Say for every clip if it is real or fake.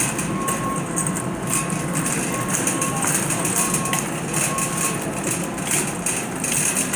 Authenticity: real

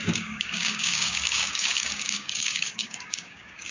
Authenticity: fake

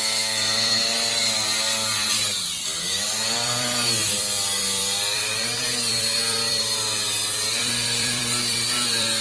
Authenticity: fake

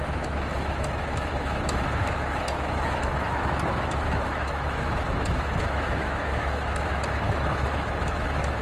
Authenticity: fake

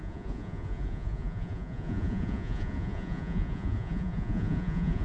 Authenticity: fake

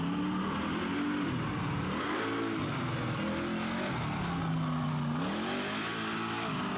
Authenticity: real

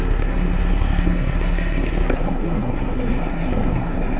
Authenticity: fake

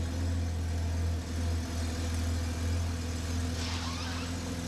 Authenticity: real